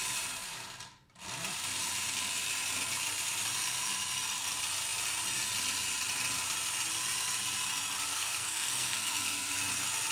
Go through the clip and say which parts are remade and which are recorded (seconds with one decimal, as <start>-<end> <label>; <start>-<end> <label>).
0.0-8.1 recorded; 8.1-9.6 remade; 9.6-10.1 recorded